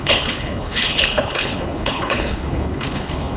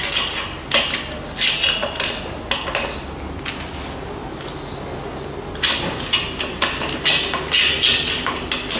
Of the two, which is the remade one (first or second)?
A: first